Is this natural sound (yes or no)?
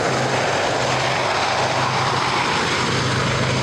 yes